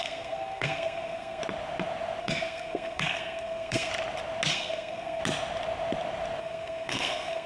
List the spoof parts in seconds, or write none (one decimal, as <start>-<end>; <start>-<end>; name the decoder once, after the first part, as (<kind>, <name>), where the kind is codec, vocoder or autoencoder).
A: 0.0-1.4 (codec, SNAC); 2.2-3.9; 4.5-5.2; 6.4-7.5